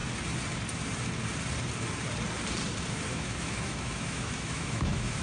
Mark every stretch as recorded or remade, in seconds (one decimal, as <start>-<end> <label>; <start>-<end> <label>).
0.0-2.9 recorded; 2.9-5.2 remade